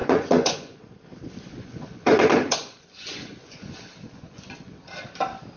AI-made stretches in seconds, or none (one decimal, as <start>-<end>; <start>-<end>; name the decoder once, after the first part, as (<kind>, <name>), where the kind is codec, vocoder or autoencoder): 0.0-0.8 (vocoder, Vocos); 1.5-4.9